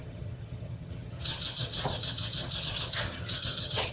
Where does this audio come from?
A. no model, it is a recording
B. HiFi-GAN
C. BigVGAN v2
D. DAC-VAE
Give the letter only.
B